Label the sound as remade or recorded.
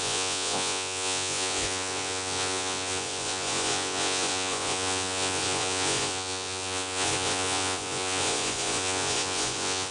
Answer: remade